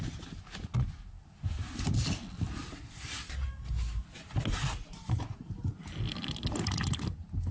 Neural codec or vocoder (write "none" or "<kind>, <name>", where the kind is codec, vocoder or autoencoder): none